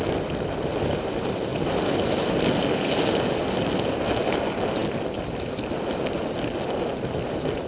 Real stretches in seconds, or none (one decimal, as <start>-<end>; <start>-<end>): 0.0-7.7